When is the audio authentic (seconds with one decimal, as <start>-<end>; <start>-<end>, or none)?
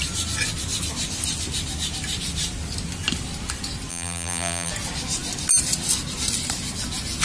0.0-3.9; 4.7-7.2